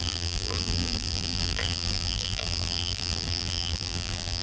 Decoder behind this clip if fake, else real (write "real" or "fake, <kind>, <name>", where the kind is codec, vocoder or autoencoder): fake, vocoder, BigVGAN v2